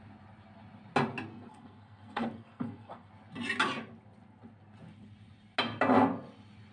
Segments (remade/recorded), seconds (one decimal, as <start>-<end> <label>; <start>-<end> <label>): 0.0-1.3 recorded; 1.3-3.1 remade; 3.1-6.7 recorded

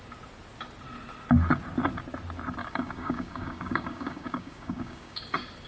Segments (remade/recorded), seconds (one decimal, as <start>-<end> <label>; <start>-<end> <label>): 0.0-2.6 recorded; 2.6-5.2 remade; 5.2-5.7 recorded